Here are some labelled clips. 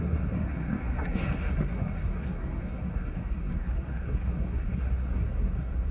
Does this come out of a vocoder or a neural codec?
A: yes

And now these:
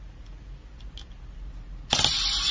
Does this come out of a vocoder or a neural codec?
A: no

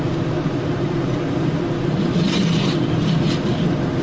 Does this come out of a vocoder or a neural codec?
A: yes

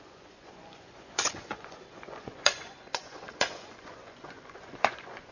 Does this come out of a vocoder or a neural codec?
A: yes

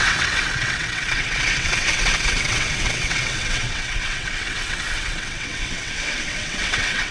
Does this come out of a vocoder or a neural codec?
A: yes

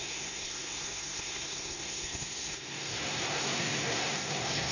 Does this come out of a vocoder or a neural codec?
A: yes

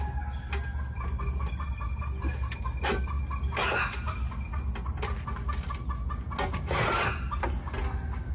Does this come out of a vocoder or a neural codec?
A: no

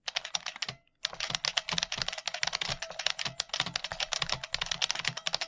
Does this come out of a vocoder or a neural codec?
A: no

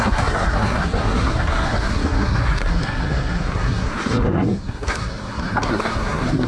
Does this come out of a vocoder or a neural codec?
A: yes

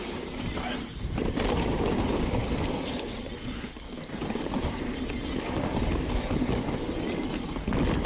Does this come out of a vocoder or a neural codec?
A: no